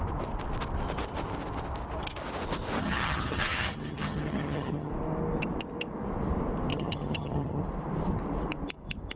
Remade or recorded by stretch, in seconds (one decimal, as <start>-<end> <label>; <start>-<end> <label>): 0.0-2.8 recorded; 2.8-4.9 remade; 4.9-6.7 recorded; 6.7-7.6 remade; 7.6-9.2 recorded